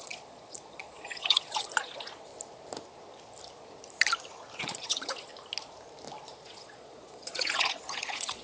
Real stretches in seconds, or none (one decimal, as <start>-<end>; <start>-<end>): 2.3-4.6; 5.3-6.2